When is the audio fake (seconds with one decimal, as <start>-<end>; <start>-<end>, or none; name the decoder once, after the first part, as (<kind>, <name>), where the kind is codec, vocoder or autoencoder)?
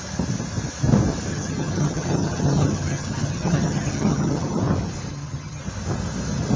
1.3-4.6 (vocoder, HiFi-GAN); 5.1-5.6